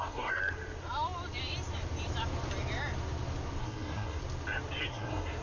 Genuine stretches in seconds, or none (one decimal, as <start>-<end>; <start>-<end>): 0.4-3.6; 4.2-4.9